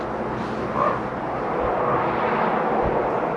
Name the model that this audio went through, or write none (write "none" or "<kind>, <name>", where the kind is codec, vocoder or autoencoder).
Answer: none